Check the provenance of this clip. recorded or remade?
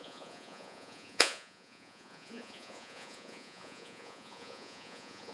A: remade